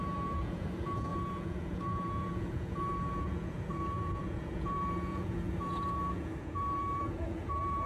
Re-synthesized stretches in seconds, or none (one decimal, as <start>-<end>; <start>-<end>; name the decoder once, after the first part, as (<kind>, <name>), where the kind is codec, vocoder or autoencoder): 0.0-7.9 (vocoder, Vocos)